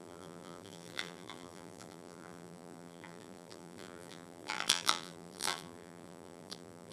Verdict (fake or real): fake